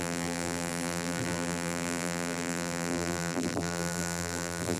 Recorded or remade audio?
remade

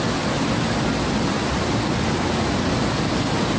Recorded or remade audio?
recorded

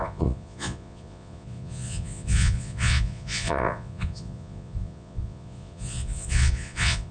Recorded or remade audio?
remade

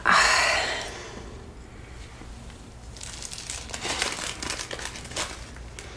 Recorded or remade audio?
recorded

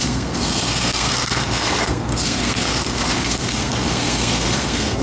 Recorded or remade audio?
remade